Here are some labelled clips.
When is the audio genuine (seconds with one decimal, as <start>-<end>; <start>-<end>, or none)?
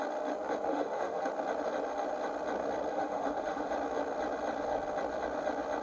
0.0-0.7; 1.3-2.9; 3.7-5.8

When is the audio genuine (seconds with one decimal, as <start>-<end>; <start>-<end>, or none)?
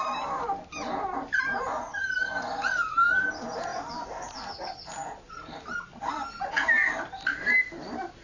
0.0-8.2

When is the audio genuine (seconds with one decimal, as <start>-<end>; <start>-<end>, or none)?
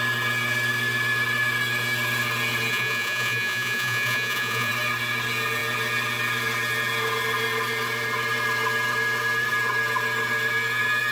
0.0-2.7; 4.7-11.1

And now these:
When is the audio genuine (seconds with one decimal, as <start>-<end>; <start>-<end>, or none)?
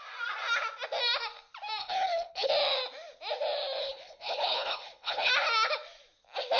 0.0-1.8; 2.5-3.8; 5.3-6.6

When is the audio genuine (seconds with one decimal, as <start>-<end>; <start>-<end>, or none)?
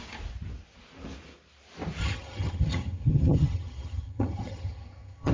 0.0-2.0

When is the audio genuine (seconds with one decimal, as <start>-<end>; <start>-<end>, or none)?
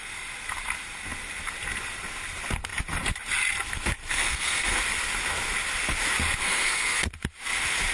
0.0-4.1; 4.8-6.4; 7.0-7.9